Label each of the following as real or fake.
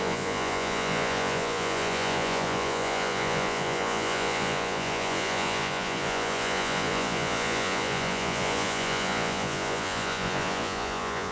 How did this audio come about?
fake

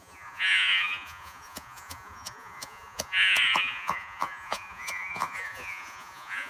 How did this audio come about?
fake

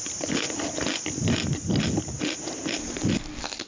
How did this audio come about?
real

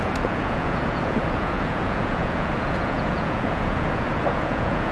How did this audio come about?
fake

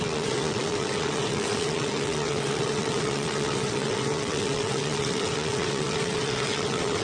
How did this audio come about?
fake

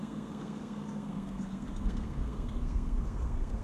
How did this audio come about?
fake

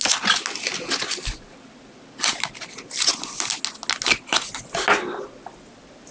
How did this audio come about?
real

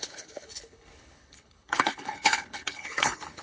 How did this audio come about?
fake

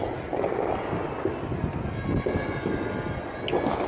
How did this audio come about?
real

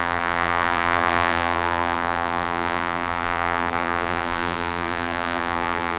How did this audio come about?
fake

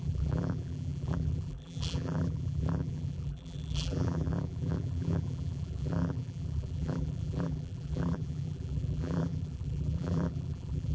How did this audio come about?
fake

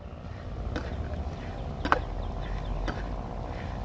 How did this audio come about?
real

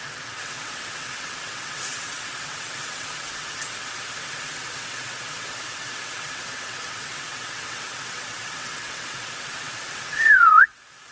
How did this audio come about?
fake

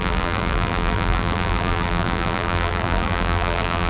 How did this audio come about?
fake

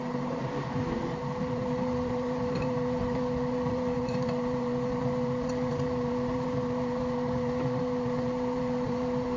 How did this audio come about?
fake